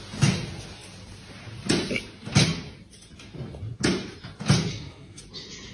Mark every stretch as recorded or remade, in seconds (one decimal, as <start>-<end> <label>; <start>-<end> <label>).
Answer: 0.0-4.7 recorded; 4.7-5.2 remade; 5.2-5.7 recorded